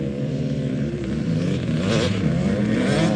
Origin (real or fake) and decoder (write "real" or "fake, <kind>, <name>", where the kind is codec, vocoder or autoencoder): real